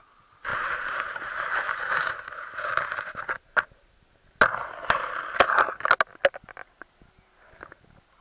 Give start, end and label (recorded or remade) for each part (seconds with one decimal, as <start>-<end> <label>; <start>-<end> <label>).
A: 0.0-0.5 recorded; 0.5-3.2 remade; 3.2-8.2 recorded